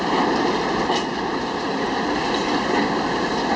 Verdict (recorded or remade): recorded